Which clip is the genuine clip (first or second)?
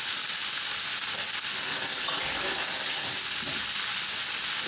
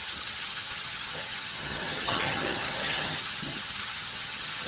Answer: first